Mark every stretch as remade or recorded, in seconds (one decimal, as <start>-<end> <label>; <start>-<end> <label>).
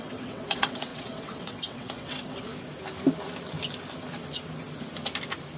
0.0-2.5 remade; 2.5-5.6 recorded